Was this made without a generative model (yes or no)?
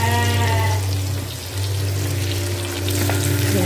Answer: yes